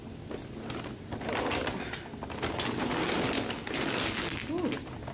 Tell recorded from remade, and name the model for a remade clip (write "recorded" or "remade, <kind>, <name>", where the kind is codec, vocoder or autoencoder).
recorded